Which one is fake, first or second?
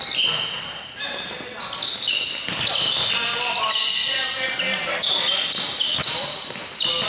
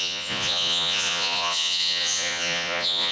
second